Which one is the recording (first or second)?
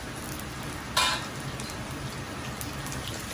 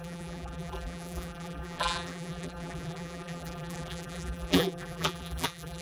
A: first